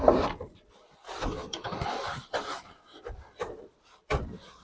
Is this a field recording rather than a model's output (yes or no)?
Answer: no